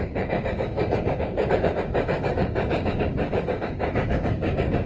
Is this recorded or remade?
remade